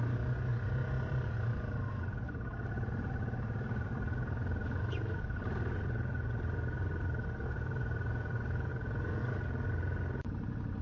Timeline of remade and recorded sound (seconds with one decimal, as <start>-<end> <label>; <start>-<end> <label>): 0.0-0.5 recorded; 0.5-1.9 remade; 1.9-3.2 recorded; 3.2-8.1 remade; 8.1-10.8 recorded